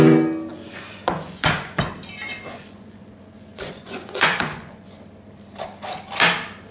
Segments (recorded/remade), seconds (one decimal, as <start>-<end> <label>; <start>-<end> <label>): 0.0-0.5 recorded; 0.5-1.9 remade; 1.9-2.5 recorded; 2.5-5.0 remade; 5.0-6.7 recorded